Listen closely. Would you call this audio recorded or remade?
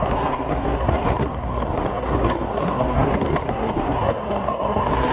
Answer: remade